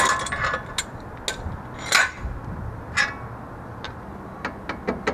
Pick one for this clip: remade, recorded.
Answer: recorded